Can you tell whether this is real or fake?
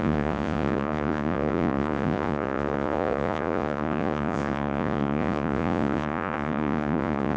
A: fake